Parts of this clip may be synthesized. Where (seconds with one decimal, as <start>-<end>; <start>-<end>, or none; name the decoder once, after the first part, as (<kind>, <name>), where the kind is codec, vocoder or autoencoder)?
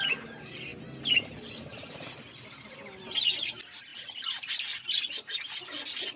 none